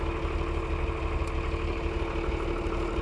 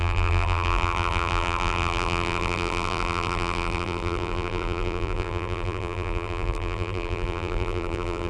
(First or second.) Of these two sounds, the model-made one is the second